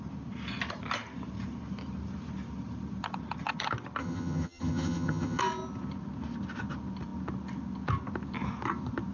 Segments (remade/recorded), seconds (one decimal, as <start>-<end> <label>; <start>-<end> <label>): 0.0-4.0 recorded; 4.0-5.4 remade; 5.4-9.1 recorded